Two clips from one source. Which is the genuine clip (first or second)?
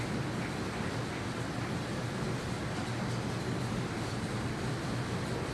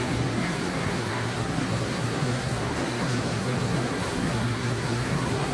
first